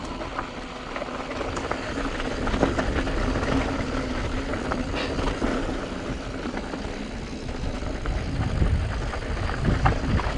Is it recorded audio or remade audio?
recorded